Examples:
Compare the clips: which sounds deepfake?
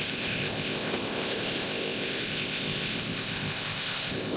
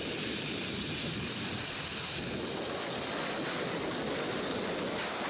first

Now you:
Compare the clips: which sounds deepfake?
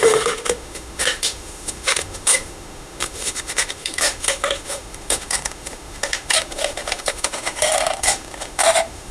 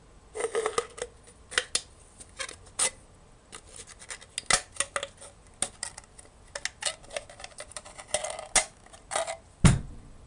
first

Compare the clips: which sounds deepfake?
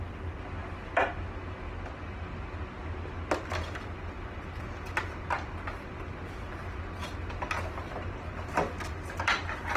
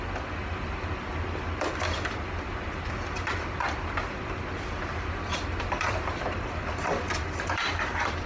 second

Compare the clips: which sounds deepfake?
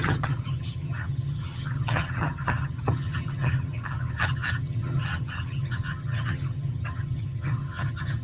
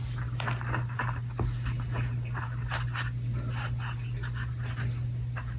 first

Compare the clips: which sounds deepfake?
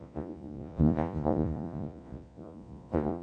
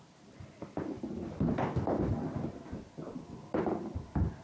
first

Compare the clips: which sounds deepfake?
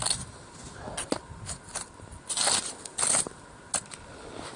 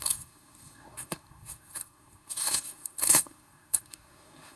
second